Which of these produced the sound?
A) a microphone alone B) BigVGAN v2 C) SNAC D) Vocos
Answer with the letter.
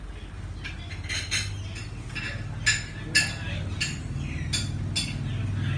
A